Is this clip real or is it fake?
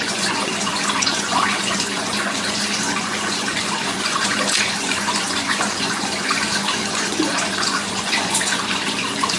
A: fake